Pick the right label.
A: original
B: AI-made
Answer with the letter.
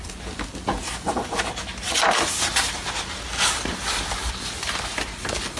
A